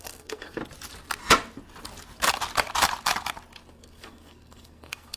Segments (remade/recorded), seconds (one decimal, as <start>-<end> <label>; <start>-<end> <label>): 0.0-0.6 remade; 0.6-3.7 recorded; 3.7-5.2 remade